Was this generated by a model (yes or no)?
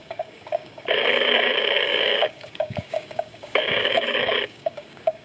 yes